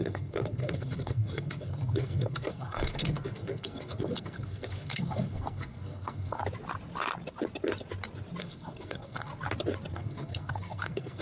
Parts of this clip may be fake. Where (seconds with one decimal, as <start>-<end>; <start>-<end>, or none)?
0.0-6.4; 8.4-9.3; 9.9-11.2